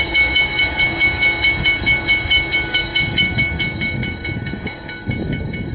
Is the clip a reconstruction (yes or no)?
yes